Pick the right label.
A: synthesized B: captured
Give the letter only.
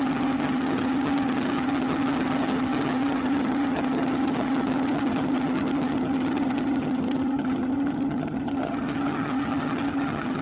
A